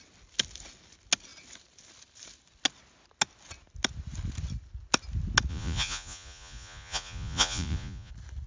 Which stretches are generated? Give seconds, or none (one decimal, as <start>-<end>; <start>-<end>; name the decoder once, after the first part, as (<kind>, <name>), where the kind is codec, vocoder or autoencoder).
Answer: 5.5-8.1 (vocoder, Vocos)